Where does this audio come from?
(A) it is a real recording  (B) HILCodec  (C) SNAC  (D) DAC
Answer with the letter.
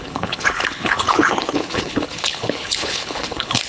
B